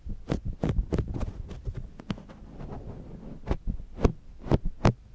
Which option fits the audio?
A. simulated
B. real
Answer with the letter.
B